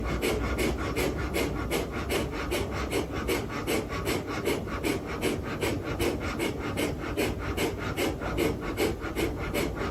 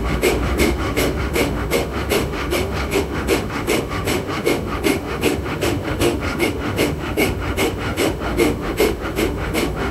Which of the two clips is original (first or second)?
first